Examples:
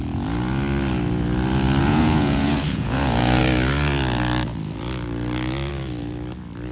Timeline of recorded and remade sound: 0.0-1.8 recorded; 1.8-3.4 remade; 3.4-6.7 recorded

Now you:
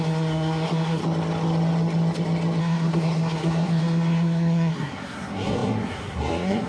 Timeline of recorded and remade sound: 0.0-1.0 remade; 1.0-2.6 recorded; 2.6-6.7 remade

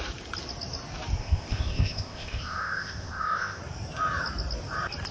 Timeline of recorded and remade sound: 0.0-1.2 recorded; 1.2-3.6 remade; 3.6-5.1 recorded

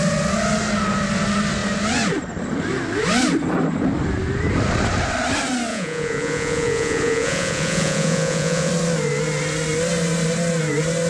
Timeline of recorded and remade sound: 0.0-5.7 recorded; 5.7-8.7 remade; 8.7-11.1 recorded

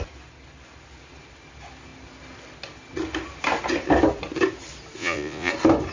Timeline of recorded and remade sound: 0.0-5.0 recorded; 5.0-5.5 remade; 5.5-5.9 recorded